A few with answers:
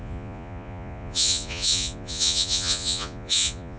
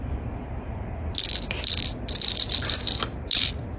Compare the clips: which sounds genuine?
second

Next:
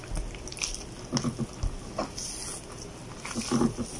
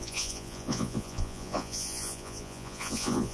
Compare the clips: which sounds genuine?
first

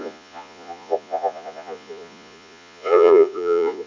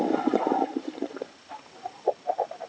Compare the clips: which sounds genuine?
second